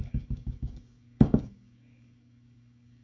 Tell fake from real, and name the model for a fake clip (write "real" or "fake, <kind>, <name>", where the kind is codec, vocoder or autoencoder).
fake, codec, DAC